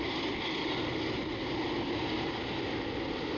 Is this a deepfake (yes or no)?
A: no